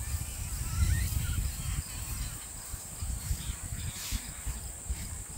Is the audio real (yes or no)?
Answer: no